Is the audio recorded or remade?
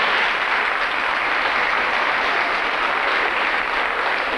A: recorded